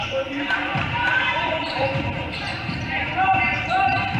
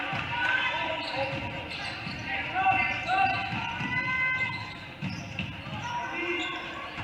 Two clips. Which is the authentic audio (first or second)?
second